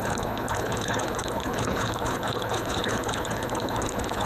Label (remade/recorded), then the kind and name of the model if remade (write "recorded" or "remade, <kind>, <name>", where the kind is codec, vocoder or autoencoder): remade, codec, HILCodec